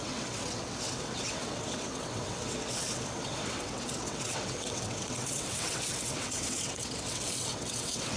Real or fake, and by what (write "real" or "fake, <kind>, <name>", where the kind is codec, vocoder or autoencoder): fake, vocoder, WaveNeXt